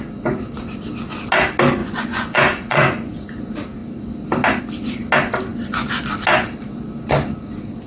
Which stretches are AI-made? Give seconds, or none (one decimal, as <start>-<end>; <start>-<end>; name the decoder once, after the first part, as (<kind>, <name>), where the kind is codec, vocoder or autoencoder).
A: 1.8-3.1 (vocoder, Vocos)